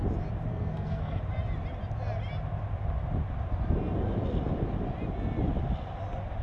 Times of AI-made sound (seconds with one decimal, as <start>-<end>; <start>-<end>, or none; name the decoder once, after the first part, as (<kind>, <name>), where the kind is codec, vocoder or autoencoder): 0.5-1.2 (codec, SNAC)